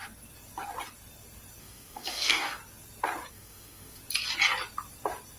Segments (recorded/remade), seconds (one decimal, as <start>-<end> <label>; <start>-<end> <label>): 0.0-1.6 recorded; 1.6-2.6 remade; 2.6-3.3 recorded; 3.3-4.0 remade; 4.0-5.4 recorded